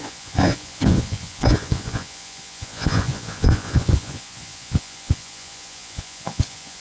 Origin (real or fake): fake